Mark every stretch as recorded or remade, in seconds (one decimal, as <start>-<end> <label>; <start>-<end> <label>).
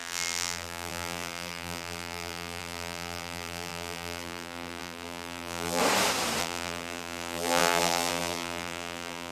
0.0-5.8 remade; 5.8-6.4 recorded; 6.4-9.3 remade